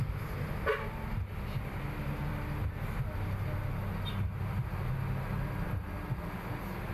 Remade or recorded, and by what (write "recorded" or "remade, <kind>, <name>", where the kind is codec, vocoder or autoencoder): recorded